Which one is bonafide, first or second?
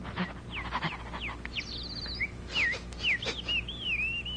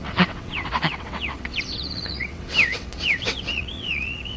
first